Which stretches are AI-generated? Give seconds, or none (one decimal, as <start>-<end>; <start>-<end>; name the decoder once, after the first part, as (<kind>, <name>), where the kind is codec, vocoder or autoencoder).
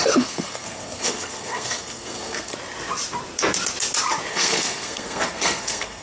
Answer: 0.0-2.5 (codec, SNAC); 4.3-6.0